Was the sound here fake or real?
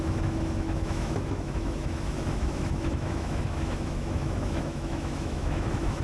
fake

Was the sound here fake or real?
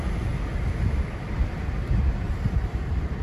real